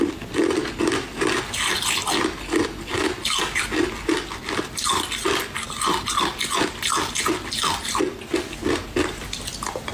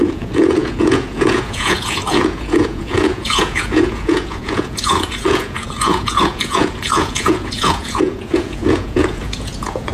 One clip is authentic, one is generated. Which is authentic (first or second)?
first